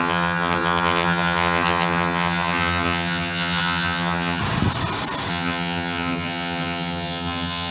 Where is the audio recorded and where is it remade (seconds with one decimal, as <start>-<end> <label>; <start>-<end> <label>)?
0.0-4.4 remade; 4.4-5.3 recorded; 5.3-7.7 remade